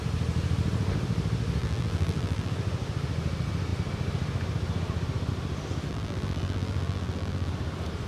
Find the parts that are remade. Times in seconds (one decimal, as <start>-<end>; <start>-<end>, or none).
1.6-2.5; 5.9-7.5